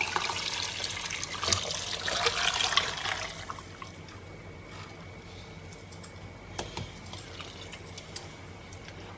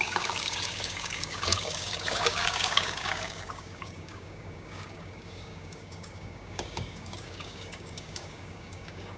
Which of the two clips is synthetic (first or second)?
second